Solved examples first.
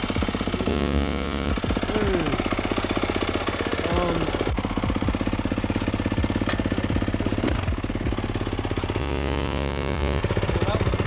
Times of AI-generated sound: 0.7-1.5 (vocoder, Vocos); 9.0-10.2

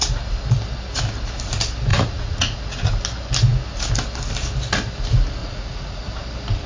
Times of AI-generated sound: 1.9-2.9 (vocoder, Vocos); 5.4-6.0

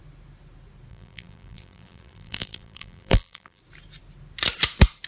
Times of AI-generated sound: 0.9-3.6 (vocoder, BigVGAN v2)